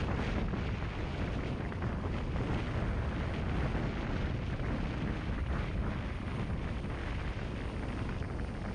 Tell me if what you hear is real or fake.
real